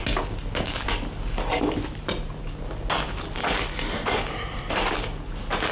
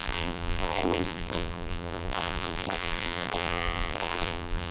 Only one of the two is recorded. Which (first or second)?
first